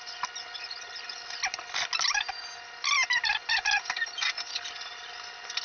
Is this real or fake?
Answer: real